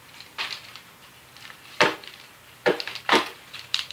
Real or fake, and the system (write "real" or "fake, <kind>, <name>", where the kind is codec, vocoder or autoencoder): fake, vocoder, BigVGAN v2